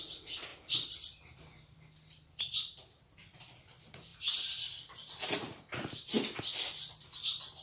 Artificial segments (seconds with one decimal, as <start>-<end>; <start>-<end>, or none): none